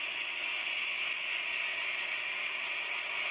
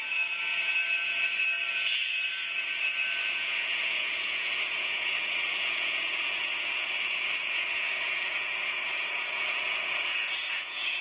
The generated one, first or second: second